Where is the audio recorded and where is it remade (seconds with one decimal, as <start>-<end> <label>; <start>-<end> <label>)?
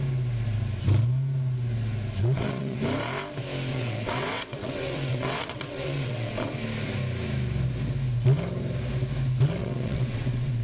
0.0-2.2 recorded; 2.2-2.8 remade; 2.8-3.7 recorded; 3.7-6.5 remade; 6.5-9.6 recorded; 9.6-10.6 remade